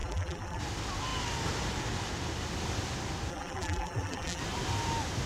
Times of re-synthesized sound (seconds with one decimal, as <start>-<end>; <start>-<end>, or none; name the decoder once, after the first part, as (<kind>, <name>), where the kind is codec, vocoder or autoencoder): 0.0-0.6 (vocoder, BigVGAN v2); 3.3-4.4